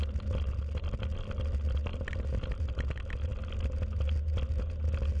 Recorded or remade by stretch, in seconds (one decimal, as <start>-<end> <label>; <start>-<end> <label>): 0.0-5.2 recorded

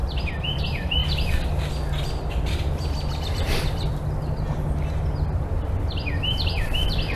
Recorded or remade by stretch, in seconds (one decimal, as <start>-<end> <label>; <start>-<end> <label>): 0.0-1.0 remade; 1.0-5.0 recorded; 5.0-7.2 remade

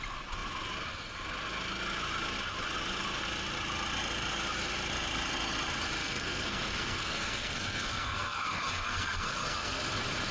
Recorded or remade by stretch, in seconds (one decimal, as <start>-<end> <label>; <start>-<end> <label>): 0.0-6.0 recorded; 6.0-9.8 remade; 9.8-10.3 recorded

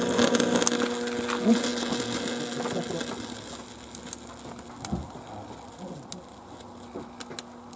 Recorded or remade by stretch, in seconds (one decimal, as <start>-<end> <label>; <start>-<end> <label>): 0.0-7.8 recorded

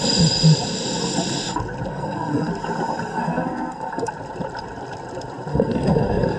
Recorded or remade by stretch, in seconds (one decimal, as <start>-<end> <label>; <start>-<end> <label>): 0.0-1.9 recorded; 1.9-2.5 remade; 2.5-3.1 recorded; 3.1-4.1 remade; 4.1-5.5 recorded; 5.5-6.4 remade

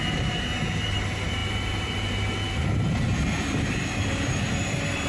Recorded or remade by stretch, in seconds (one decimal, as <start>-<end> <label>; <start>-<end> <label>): 0.0-5.1 remade